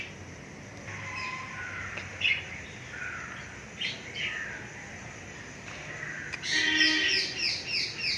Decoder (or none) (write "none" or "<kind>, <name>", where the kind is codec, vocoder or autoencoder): none